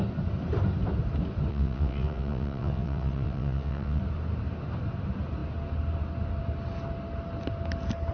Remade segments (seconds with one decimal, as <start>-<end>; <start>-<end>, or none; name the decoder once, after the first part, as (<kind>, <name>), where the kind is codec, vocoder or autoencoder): 1.5-4.0 (vocoder, WaveNeXt)